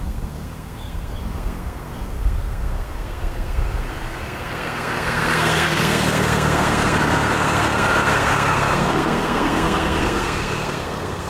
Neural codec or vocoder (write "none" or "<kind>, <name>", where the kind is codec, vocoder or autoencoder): codec, SNAC